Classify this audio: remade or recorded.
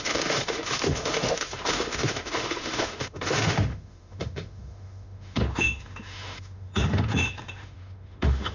remade